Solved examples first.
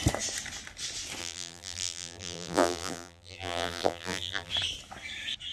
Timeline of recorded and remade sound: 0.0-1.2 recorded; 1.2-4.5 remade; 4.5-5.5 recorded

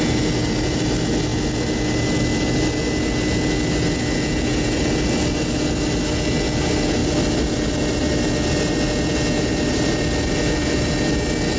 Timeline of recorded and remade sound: 0.0-7.0 recorded; 7.0-8.3 remade; 8.3-9.5 recorded; 9.5-10.3 remade; 10.3-11.6 recorded

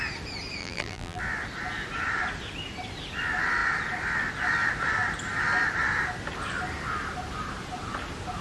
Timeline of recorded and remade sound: 0.0-0.6 recorded; 0.6-1.2 remade; 1.2-8.4 recorded

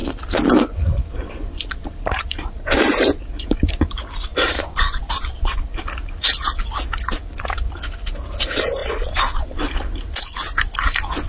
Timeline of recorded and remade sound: 0.0-1.8 recorded; 1.8-3.7 remade; 3.7-11.3 recorded

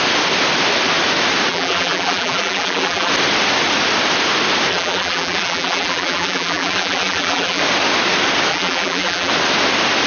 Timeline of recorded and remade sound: 0.0-1.5 recorded; 1.5-3.1 remade; 3.1-4.7 recorded; 4.7-7.6 remade; 7.6-8.5 recorded; 8.5-9.3 remade; 9.3-10.1 recorded

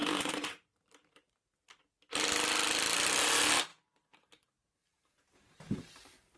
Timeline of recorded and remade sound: 0.0-1.3 remade; 1.3-3.7 recorded; 3.7-6.4 remade

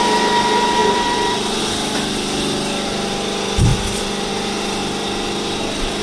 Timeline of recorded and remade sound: 0.0-0.8 recorded; 0.8-1.6 remade; 1.6-3.7 recorded; 3.7-4.3 remade; 4.3-4.8 recorded; 4.8-6.0 remade

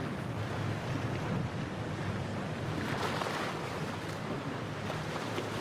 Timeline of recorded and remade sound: 0.0-5.6 recorded